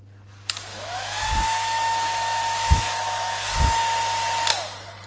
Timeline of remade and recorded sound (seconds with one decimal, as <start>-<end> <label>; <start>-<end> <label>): 0.0-0.7 recorded; 0.7-3.8 remade; 3.8-5.1 recorded